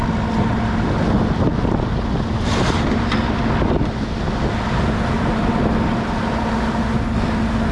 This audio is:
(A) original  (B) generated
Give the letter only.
A